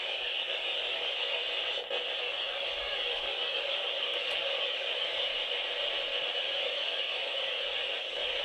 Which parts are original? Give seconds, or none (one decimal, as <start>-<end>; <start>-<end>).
1.4-2.2; 5.3-6.3